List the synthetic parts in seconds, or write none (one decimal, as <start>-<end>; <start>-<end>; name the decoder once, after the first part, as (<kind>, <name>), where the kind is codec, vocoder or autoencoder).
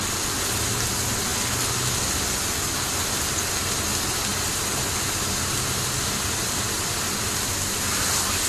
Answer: 4.3-7.9 (vocoder, BigVGAN v2)